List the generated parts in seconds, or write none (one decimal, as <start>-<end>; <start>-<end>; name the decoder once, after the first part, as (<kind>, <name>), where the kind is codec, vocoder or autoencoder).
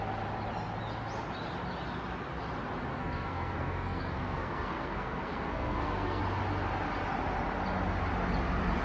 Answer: 2.9-6.2 (codec, SNAC)